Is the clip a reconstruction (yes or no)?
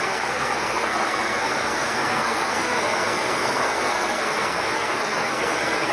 yes